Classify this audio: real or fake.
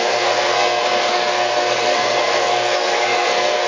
fake